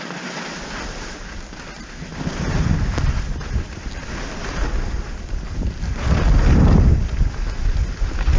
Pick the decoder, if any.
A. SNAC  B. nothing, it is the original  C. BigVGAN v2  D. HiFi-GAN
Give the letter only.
B